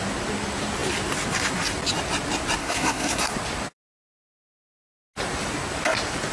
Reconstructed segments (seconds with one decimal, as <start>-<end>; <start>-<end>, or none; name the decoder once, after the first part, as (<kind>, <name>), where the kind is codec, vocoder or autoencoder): 2.6-3.3 (codec, SNAC)